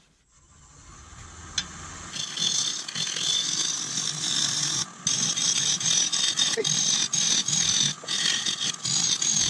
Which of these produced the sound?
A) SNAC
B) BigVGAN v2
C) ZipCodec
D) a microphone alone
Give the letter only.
D